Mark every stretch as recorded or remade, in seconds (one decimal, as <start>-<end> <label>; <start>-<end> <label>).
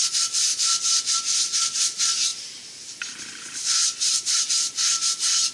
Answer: 0.0-2.3 recorded; 2.3-5.1 remade; 5.1-5.5 recorded